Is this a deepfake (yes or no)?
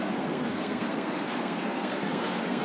yes